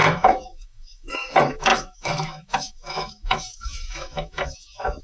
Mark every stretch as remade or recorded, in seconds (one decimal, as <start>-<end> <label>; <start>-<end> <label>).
0.0-5.0 remade